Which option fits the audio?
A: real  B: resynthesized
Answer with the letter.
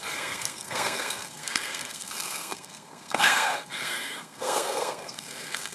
B